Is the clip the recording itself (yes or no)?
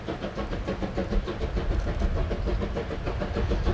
yes